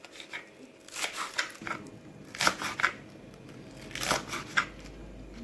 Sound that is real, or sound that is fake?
real